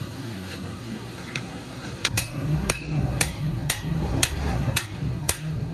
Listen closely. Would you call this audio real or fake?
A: fake